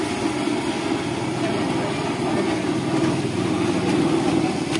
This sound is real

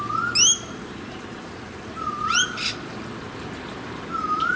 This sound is real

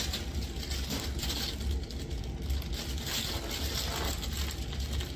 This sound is real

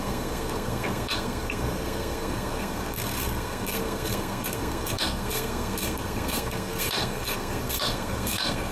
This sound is fake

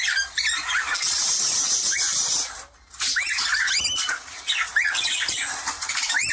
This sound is real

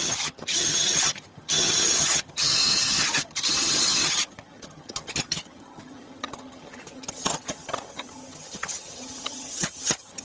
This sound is fake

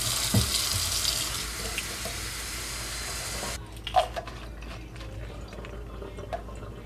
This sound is real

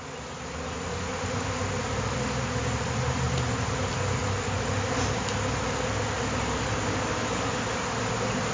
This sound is real